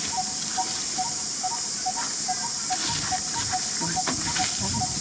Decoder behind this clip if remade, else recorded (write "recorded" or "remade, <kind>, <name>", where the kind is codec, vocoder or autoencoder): recorded